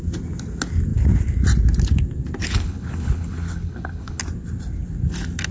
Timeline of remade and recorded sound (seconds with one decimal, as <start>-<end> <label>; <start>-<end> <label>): 0.0-2.4 recorded; 2.4-4.2 remade; 4.2-5.5 recorded